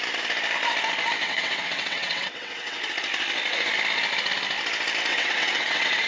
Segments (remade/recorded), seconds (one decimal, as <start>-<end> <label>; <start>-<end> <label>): 0.0-1.2 recorded; 1.2-2.8 remade; 2.8-5.1 recorded; 5.1-6.1 remade